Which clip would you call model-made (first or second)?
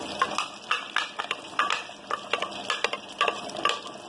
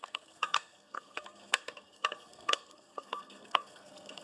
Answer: second